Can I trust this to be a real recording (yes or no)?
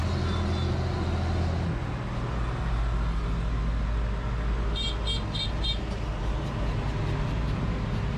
yes